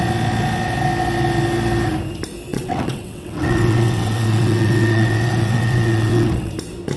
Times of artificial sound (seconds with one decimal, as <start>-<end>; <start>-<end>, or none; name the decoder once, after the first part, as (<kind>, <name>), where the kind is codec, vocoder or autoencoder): 2.5-6.5 (vocoder, WaveNeXt)